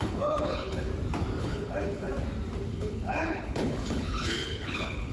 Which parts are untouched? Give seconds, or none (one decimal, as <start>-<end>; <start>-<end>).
0.9-1.4; 2.1-2.7